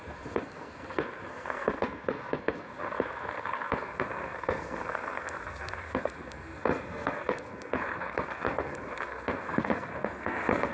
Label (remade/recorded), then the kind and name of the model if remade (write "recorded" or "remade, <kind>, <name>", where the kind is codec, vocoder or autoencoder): remade, codec, SNAC